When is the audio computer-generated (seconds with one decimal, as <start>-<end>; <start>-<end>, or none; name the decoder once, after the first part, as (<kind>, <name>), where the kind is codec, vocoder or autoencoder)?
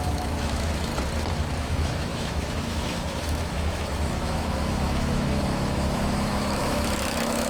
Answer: 0.0-0.9 (autoencoder, DAC-VAE); 1.6-7.5